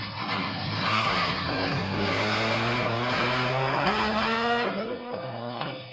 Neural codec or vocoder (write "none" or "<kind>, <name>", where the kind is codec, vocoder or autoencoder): codec, SNAC